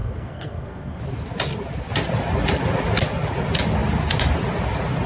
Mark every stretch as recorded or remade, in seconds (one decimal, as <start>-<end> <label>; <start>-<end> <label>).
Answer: 0.0-1.0 remade; 1.0-5.1 recorded